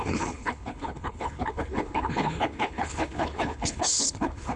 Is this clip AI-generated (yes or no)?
yes